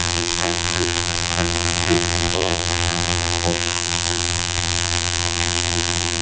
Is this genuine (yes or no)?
no